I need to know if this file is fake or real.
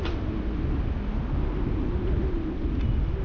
real